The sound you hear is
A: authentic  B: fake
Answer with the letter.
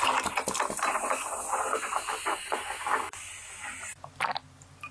A